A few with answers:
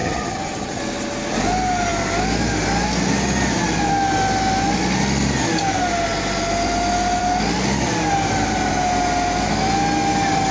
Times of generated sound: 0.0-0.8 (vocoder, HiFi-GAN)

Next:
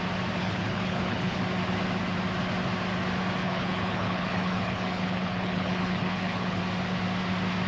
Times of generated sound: 0.4-1.4 (codec, HILCodec); 3.4-6.6

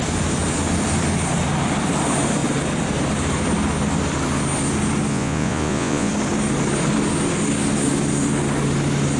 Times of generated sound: 5.1-6.1 (vocoder, Vocos)

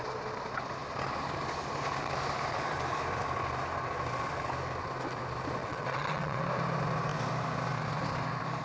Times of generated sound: 5.6-6.4 (vocoder, WaveNeXt)

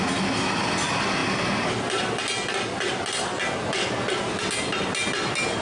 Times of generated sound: none

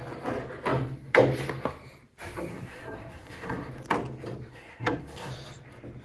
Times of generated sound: 2.5-3.7 (codec, SNAC); 4.5-5.3

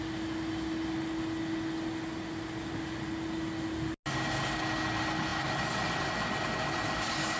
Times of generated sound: none